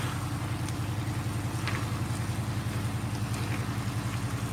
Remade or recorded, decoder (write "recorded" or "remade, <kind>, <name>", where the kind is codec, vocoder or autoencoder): recorded